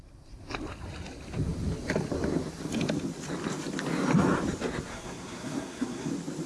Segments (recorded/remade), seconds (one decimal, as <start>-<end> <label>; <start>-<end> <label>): 0.0-4.9 recorded; 4.9-6.1 remade; 6.1-6.5 recorded